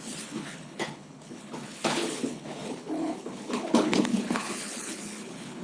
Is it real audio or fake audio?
fake